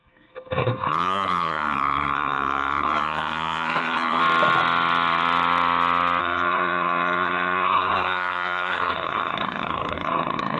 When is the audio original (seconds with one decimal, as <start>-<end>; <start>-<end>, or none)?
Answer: 4.2-6.2